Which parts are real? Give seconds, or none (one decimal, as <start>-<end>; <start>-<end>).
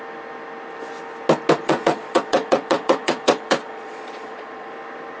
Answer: 0.0-1.6; 4.7-5.2